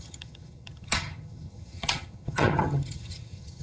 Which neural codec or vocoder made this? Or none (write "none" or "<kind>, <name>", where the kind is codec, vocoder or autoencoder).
vocoder, HiFi-GAN